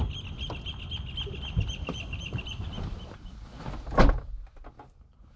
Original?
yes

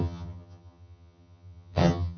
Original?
no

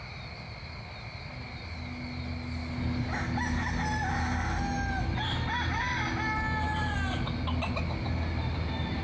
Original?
yes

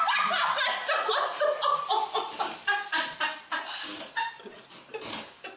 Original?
yes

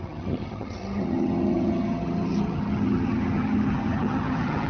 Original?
no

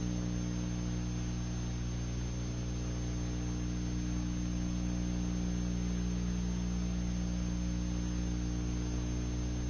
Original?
yes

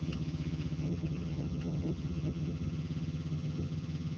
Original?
no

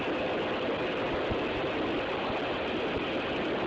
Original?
yes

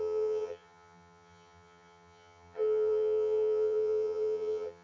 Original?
no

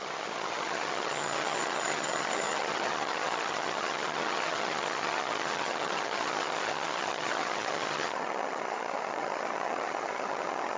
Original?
no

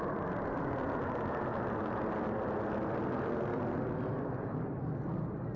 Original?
yes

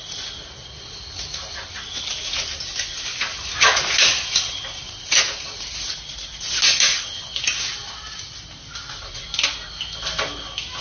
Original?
yes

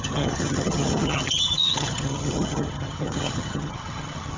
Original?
no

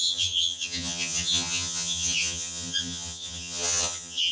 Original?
no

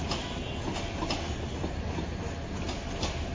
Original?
yes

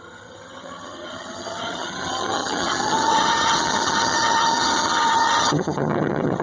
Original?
no